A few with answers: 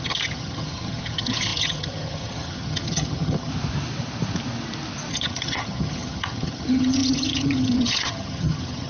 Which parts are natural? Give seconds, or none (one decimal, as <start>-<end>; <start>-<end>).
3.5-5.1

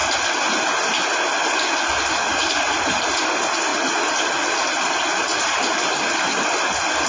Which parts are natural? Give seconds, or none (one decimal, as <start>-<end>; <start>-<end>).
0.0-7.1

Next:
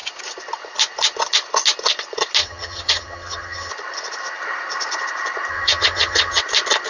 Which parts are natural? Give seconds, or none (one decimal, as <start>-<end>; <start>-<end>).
0.0-2.4; 3.7-5.5; 6.4-6.9

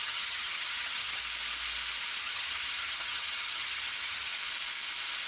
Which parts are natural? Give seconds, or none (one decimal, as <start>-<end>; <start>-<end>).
1.2-2.2; 4.3-5.3

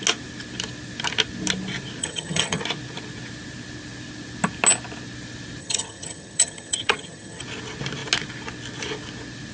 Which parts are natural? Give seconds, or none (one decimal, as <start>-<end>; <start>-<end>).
0.0-2.0; 2.6-5.6; 7.4-9.5

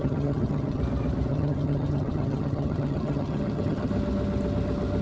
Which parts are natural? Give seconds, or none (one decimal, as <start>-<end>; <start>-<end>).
0.8-1.3; 3.9-5.0